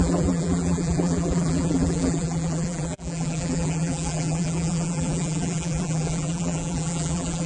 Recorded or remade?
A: remade